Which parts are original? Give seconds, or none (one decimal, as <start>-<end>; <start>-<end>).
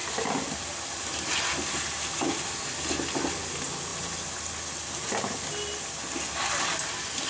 0.0-7.3